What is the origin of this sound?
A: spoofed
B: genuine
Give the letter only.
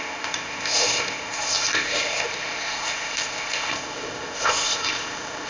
A